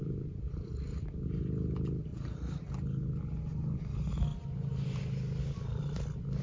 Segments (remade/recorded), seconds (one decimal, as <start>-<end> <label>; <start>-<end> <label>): 0.0-1.4 remade; 1.4-2.1 recorded; 2.1-2.7 remade; 2.7-6.4 recorded